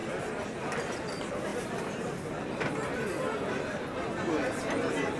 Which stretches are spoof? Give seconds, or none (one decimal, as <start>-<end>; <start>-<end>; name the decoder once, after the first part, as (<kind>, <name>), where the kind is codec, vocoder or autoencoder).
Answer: none